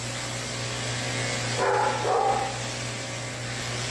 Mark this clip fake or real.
real